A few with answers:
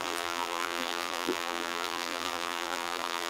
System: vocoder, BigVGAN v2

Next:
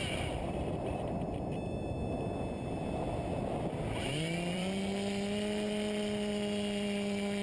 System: vocoder, BigVGAN v2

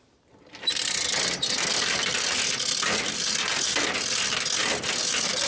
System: none